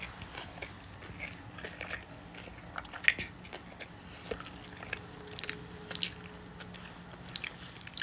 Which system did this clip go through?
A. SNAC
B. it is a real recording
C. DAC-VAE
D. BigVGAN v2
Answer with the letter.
B